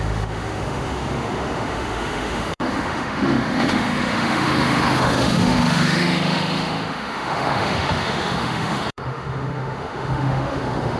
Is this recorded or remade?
remade